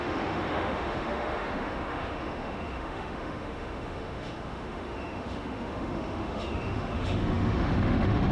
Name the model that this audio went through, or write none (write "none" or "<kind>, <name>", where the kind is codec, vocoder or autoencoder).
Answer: autoencoder, DAC-VAE